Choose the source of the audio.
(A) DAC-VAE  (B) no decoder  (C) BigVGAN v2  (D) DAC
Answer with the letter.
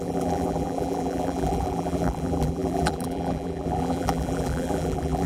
C